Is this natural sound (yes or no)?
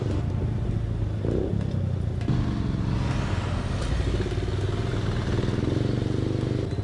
yes